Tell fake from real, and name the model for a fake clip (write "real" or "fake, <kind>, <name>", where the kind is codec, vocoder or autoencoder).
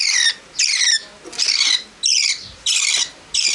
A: real